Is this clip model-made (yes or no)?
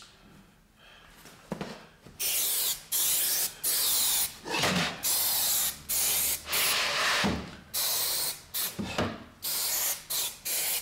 no